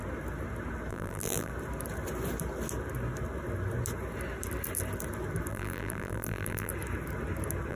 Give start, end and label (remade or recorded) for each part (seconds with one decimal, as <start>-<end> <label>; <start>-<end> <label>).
0.0-0.9 recorded; 0.9-1.5 remade; 1.5-5.5 recorded; 5.5-6.7 remade; 6.7-7.7 recorded